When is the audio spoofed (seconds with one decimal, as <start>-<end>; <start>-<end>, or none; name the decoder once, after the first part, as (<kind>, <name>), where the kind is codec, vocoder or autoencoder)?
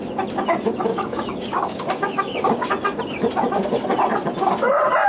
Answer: 0.9-2.7 (codec, DAC)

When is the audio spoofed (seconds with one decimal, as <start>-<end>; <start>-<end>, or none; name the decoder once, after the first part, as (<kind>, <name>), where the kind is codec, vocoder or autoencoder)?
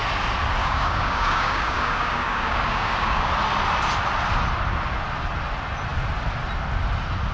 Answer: 0.6-3.3 (codec, DAC)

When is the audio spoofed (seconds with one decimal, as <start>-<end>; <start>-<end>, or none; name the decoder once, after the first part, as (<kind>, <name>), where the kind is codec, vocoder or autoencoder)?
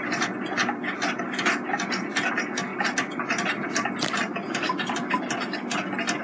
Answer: none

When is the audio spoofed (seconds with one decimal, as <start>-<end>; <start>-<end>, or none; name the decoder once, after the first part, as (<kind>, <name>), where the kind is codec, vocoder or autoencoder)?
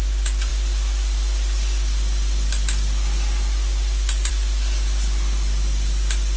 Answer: none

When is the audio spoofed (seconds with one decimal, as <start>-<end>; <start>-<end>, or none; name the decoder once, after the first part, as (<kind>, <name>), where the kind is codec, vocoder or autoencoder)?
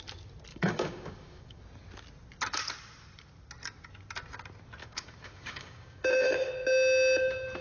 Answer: 0.5-1.6 (codec, DAC); 4.8-6.5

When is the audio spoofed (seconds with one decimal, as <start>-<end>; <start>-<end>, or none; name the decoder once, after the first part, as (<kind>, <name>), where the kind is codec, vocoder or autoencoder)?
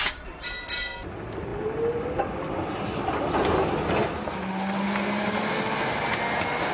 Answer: none